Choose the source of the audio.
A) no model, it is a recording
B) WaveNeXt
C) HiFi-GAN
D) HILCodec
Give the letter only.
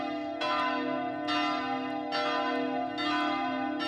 A